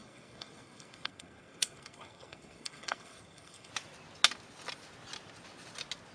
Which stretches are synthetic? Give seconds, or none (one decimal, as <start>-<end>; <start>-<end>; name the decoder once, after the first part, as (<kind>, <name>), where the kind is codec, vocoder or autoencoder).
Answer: 0.0-3.7 (codec, SNAC)